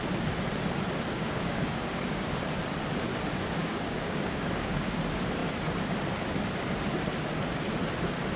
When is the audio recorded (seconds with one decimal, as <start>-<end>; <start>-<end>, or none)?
0.0-1.1; 2.4-3.6; 5.0-8.4